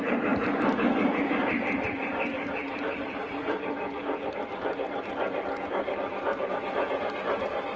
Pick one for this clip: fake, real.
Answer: fake